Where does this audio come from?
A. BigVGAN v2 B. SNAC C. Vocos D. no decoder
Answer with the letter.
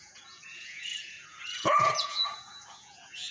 C